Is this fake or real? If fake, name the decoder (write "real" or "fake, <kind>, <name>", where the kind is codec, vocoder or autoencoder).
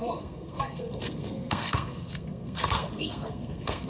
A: fake, codec, SNAC